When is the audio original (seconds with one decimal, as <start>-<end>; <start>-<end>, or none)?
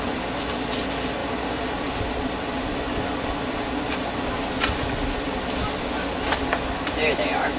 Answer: 0.0-7.6